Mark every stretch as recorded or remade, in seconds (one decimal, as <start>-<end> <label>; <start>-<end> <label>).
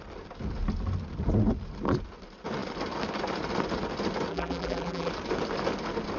0.0-4.3 recorded; 4.3-5.1 remade; 5.1-6.2 recorded